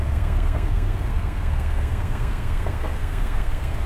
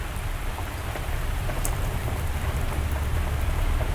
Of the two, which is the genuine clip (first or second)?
second